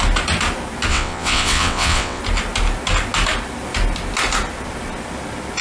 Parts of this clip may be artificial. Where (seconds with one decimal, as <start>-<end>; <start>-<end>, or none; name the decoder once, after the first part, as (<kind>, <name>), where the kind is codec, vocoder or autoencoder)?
0.9-2.2 (vocoder, WaveNeXt)